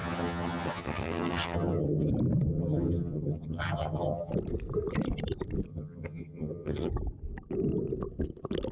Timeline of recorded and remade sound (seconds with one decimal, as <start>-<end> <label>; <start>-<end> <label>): 0.0-2.1 remade; 2.1-2.5 recorded; 2.5-4.3 remade; 4.3-5.7 recorded; 5.7-6.9 remade; 6.9-8.7 recorded

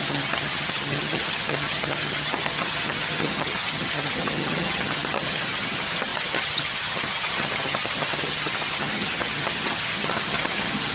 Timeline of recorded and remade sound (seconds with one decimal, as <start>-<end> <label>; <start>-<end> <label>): 0.0-10.9 remade

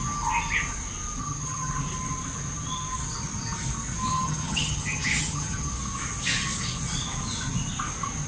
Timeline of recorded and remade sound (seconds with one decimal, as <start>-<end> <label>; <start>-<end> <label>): 0.0-1.2 recorded; 1.2-1.7 remade; 1.7-4.1 recorded; 4.1-5.7 remade; 5.7-8.3 recorded